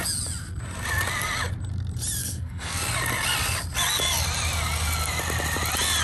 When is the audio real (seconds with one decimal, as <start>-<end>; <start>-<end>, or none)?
0.0-2.2; 2.8-6.0